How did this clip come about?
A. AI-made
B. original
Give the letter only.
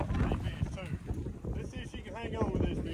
B